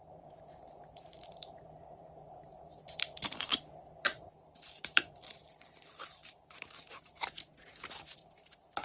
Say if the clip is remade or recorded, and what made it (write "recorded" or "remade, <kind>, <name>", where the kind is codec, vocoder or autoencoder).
remade, vocoder, BigVGAN v2